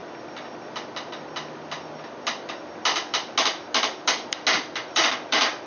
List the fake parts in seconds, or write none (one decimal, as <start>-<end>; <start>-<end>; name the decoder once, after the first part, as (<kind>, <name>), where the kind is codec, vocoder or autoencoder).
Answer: 4.9-5.7 (vocoder, BigVGAN v2)

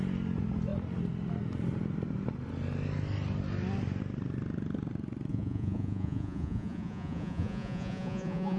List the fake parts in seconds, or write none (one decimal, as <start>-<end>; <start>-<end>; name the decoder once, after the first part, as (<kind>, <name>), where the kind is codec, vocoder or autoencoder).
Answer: 5.3-8.6 (vocoder, Vocos)

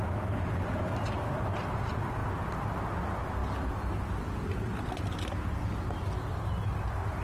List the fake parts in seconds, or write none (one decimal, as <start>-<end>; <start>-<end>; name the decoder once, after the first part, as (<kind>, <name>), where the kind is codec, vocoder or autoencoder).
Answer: none

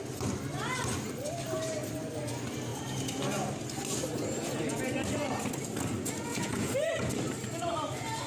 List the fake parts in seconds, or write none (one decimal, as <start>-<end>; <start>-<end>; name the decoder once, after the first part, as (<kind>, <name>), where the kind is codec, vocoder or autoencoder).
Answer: 6.3-6.9 (vocoder, Vocos)

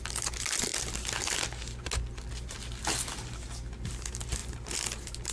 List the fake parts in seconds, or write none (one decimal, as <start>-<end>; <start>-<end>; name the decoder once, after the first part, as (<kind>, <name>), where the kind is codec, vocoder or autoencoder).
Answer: none